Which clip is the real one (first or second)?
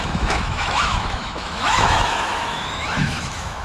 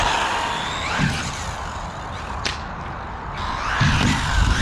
second